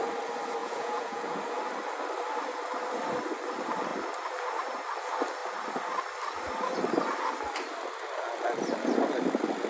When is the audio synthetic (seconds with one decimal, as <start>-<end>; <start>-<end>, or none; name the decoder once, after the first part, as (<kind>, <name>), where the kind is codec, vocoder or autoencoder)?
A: 0.6-1.4 (vocoder, Vocos)